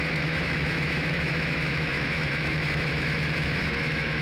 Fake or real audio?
fake